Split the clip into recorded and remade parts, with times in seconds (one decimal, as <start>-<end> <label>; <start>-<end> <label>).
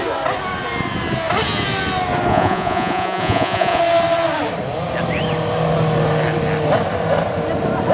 0.0-2.3 recorded; 2.3-3.8 remade; 3.8-7.9 recorded